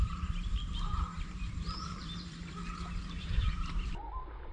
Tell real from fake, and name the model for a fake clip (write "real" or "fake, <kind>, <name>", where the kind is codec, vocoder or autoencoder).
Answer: fake, vocoder, BigVGAN v2